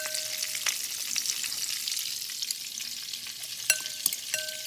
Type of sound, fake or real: real